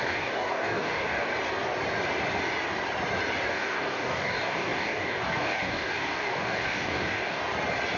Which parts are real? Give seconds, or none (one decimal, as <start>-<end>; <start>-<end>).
1.3-3.5; 7.4-8.0